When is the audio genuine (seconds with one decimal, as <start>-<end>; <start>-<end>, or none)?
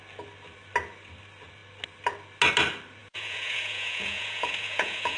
0.0-3.0